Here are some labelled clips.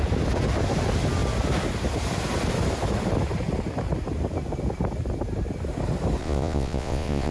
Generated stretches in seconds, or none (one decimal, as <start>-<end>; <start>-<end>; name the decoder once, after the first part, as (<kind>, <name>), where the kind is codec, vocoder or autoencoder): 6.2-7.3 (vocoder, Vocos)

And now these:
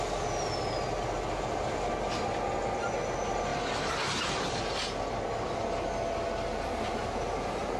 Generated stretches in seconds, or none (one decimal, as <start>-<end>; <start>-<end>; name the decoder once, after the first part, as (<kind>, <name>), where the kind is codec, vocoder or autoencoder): none

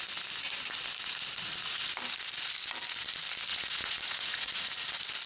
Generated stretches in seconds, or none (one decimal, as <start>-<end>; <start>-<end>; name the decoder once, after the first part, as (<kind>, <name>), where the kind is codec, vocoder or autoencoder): 3.5-4.7 (vocoder, Vocos)

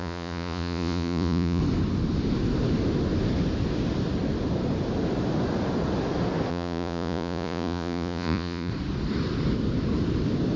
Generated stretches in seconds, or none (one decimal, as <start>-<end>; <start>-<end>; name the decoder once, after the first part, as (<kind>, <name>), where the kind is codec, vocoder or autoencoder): 0.0-1.6 (vocoder, Vocos); 6.5-8.7